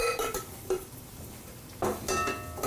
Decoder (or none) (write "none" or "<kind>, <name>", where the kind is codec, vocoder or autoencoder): none